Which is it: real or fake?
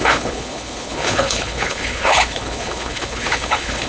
fake